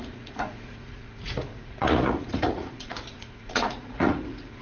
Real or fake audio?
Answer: fake